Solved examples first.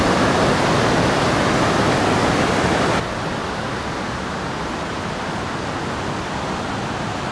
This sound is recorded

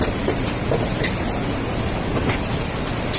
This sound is recorded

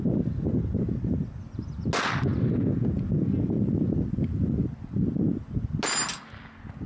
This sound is recorded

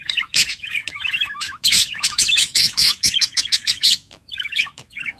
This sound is remade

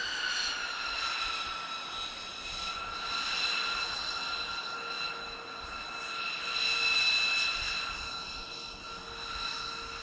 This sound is recorded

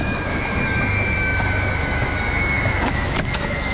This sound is remade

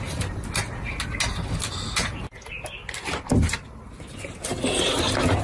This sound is recorded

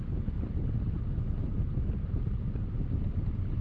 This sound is recorded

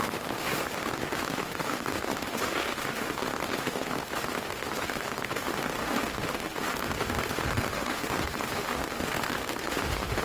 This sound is remade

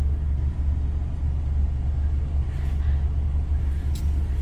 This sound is recorded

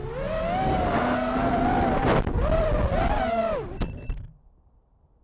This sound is recorded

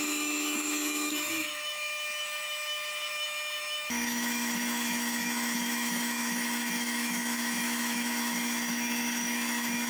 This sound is remade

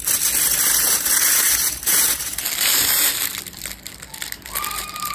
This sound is recorded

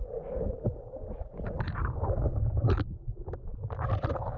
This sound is recorded